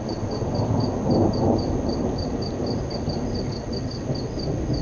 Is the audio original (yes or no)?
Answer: yes